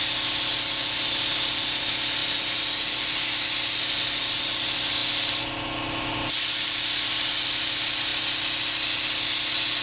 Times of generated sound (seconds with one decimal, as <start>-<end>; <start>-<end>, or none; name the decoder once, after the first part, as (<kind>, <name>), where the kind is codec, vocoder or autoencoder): none

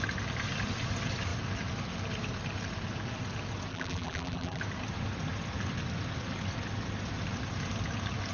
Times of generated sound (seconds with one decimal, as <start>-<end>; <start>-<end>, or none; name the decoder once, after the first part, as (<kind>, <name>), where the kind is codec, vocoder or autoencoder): 3.7-4.6 (vocoder, BigVGAN v2)

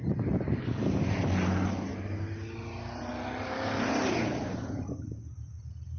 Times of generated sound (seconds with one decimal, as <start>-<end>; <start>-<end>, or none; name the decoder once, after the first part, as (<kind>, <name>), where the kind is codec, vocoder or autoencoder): none

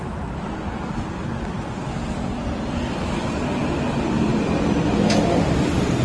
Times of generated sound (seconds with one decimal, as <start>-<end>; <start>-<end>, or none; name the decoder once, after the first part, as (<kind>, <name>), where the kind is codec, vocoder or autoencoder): 4.3-5.5 (vocoder, BigVGAN v2)

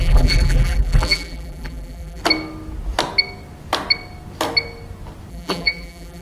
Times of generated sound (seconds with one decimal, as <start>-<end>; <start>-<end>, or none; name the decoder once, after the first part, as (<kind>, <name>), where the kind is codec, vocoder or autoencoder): 0.0-2.2 (vocoder, BigVGAN v2); 5.3-6.2

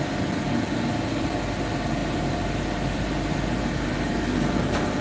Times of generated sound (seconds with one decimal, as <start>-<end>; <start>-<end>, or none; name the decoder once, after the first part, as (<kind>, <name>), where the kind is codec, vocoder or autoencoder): 2.0-4.3 (vocoder, BigVGAN v2)

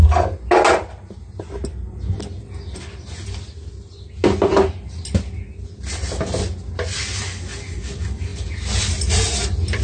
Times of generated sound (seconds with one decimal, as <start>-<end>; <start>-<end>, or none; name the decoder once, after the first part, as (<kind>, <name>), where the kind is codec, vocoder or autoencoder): none